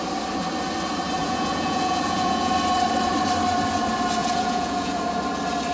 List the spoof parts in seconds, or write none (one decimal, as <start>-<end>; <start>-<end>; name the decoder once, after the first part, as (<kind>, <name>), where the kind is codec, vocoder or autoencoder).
1.2-2.5 (vocoder, Vocos); 4.2-5.0